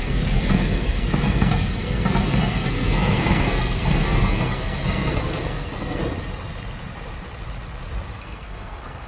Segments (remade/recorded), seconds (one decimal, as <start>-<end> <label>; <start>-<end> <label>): 0.0-6.0 remade; 6.0-8.2 recorded; 8.2-9.1 remade